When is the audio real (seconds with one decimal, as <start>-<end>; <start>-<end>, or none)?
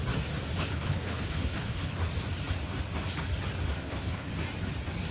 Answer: 0.0-0.5; 2.0-3.8; 4.3-5.1